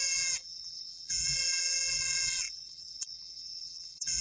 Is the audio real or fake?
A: fake